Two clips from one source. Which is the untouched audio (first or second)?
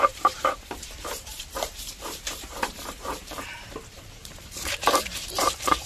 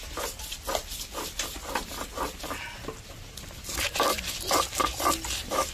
second